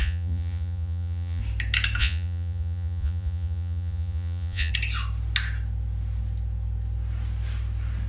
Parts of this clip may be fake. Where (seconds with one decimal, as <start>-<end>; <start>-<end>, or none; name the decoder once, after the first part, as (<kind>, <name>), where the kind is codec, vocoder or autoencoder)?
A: 0.0-1.4 (vocoder, Vocos); 2.0-4.7

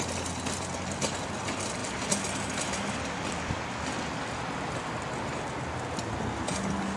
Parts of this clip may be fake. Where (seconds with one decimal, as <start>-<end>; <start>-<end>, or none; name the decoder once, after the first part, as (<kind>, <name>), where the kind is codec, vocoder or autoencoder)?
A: none

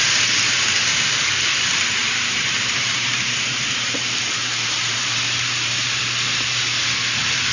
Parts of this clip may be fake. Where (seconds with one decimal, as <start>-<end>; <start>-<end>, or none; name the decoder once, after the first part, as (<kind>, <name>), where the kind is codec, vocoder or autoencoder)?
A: 2.0-6.0 (vocoder, BigVGAN v2)

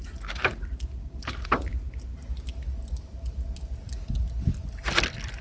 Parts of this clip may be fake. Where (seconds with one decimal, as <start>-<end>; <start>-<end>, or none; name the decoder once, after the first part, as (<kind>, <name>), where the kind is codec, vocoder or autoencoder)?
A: none

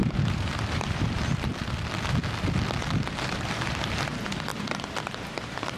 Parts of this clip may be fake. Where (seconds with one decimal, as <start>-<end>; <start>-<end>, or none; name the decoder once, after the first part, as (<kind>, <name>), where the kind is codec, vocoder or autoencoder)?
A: 0.0-1.5 (vocoder, BigVGAN v2); 3.1-5.8

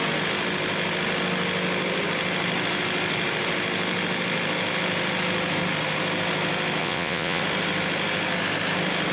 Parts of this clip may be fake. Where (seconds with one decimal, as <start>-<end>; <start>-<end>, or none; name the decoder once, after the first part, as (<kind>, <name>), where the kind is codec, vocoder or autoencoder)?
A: 6.8-7.4 (vocoder, Vocos)

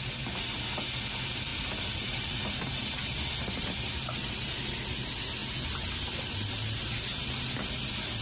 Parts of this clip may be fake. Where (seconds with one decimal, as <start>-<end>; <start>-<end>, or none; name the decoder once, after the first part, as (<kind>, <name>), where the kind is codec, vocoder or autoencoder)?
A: 1.5-4.7 (vocoder, BigVGAN v2)

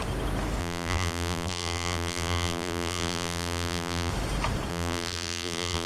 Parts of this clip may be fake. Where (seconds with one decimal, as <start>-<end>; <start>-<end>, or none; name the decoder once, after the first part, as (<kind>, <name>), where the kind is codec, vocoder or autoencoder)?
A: 0.6-4.1 (vocoder, BigVGAN v2); 4.7-5.9